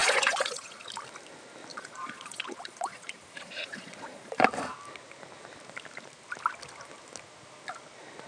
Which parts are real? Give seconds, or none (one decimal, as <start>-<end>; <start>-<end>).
0.9-1.7; 4.4-8.3